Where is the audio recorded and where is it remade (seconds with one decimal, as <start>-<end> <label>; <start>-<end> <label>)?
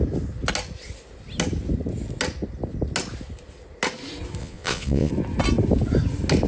0.0-4.4 recorded; 4.4-5.1 remade; 5.1-6.5 recorded